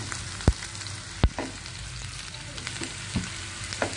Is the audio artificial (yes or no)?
no